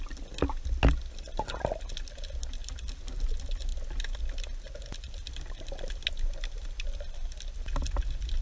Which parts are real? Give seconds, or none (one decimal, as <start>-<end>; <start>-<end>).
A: 0.0-8.4